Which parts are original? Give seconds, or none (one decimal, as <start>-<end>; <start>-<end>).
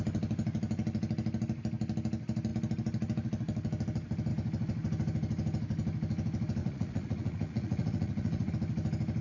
0.0-6.6; 8.5-9.2